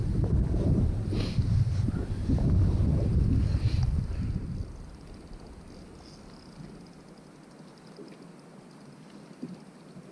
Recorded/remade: recorded